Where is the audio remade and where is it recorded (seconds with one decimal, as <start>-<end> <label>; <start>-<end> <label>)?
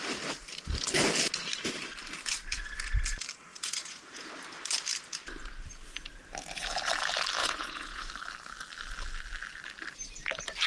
0.0-3.5 recorded; 3.5-4.3 remade; 4.3-7.4 recorded; 7.4-8.1 remade; 8.1-10.7 recorded